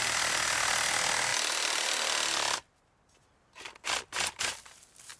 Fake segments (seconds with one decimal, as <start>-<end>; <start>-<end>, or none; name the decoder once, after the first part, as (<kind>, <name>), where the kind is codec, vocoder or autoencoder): none